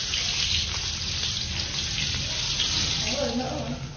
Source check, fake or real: real